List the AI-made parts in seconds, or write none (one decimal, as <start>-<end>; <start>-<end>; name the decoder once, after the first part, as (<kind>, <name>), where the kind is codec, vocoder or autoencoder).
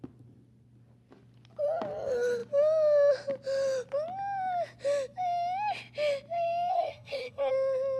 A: 6.7-7.5 (codec, SNAC)